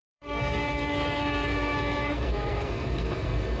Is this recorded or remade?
remade